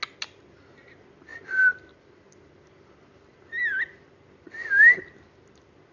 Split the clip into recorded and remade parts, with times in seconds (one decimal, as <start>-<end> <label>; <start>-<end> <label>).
0.0-5.9 recorded